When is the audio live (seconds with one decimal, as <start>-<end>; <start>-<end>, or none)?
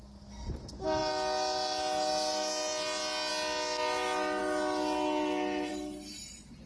0.0-6.7